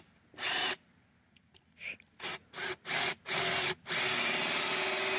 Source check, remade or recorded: recorded